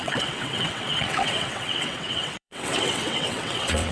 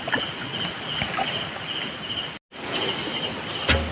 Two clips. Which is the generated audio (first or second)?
first